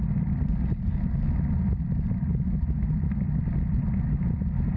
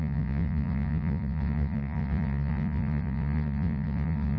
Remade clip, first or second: second